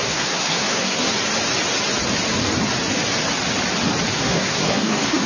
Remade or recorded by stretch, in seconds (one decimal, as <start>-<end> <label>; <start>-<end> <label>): 0.0-1.1 remade; 1.1-4.1 recorded; 4.1-5.3 remade